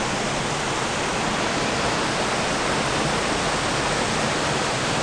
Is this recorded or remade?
recorded